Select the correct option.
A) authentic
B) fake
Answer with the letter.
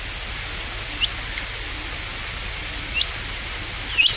A